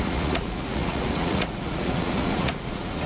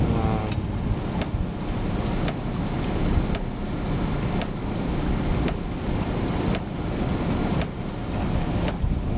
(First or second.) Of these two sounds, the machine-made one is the first